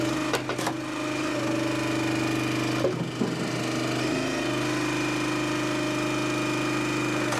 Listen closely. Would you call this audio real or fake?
real